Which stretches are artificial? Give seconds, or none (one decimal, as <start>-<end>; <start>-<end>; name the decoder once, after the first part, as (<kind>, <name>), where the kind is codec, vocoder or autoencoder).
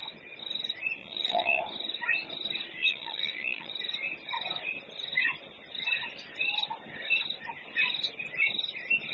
1.0-1.6 (vocoder, Vocos); 2.8-3.7